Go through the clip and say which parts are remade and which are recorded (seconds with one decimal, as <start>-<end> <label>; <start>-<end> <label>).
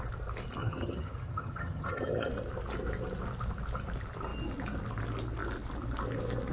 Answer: 0.0-0.6 recorded; 0.6-2.3 remade; 2.3-6.5 recorded